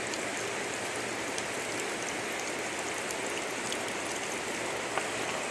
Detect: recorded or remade recorded